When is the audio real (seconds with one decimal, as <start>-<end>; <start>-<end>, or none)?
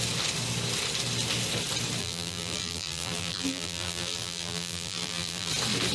0.0-2.0; 5.5-5.9